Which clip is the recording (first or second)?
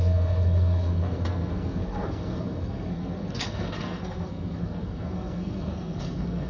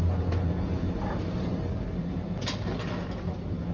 second